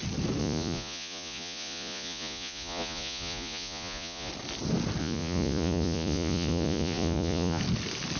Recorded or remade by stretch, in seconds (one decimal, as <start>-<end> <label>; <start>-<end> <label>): 0.0-0.4 recorded; 0.4-4.3 remade; 4.3-5.0 recorded; 5.0-7.6 remade; 7.6-8.2 recorded